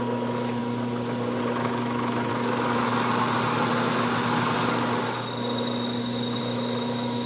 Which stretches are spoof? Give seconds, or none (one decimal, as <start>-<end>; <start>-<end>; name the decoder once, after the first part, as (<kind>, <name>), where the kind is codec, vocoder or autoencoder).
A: 0.0-0.6 (autoencoder, DAC-VAE); 1.4-2.3; 6.4-7.3